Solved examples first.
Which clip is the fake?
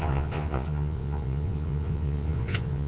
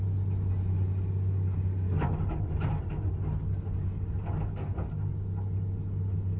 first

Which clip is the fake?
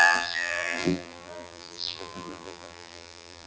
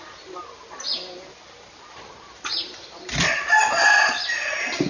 first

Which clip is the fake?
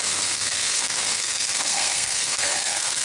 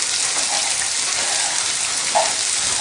first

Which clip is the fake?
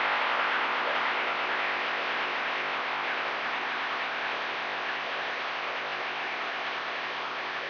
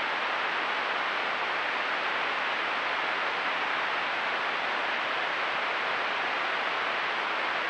first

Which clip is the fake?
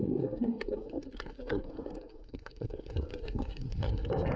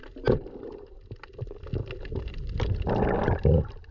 first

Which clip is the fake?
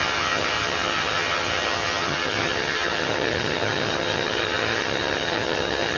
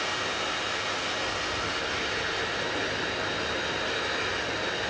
first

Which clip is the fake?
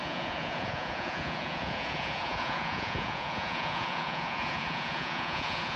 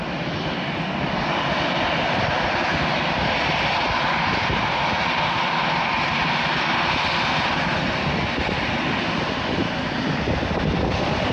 first